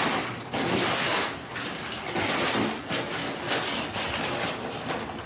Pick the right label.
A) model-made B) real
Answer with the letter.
B